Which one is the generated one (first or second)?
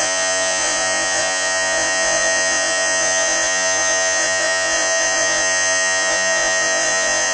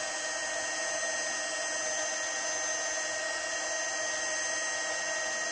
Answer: first